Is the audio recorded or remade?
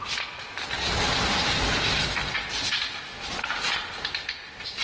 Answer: recorded